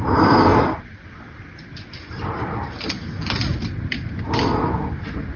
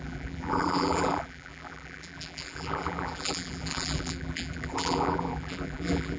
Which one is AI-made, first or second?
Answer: second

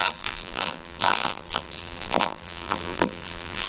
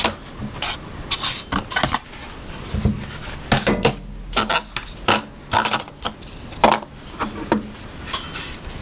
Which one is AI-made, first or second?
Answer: first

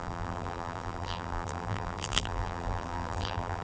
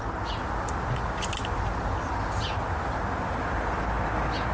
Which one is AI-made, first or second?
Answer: first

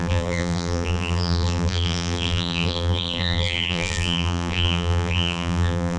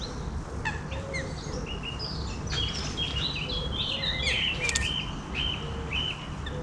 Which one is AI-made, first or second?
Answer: first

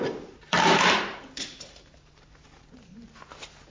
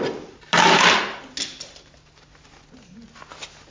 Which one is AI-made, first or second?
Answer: first